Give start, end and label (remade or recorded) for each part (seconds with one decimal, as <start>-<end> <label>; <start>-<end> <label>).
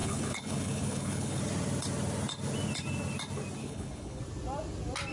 0.0-1.4 remade; 1.4-3.6 recorded; 3.6-4.2 remade; 4.2-5.1 recorded